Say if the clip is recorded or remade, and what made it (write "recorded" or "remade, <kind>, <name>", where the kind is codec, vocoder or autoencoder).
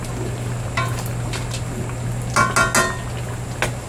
recorded